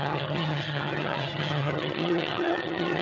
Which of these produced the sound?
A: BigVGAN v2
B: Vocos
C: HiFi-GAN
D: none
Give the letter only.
C